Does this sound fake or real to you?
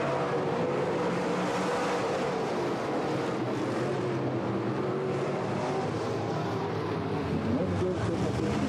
real